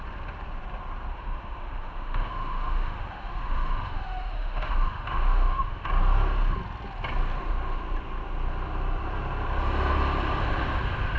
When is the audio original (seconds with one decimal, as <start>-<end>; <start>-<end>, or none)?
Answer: 0.0-1.1; 5.9-11.2